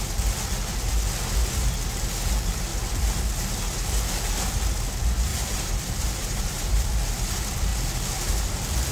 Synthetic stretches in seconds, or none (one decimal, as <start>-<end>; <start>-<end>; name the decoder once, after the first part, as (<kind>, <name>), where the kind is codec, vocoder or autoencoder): 5.3-6.9 (vocoder, BigVGAN v2)